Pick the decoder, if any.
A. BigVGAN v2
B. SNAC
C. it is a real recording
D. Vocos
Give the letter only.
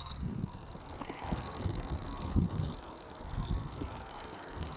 B